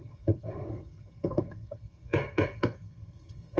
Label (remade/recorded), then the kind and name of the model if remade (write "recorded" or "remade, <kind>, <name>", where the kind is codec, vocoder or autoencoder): remade, codec, SNAC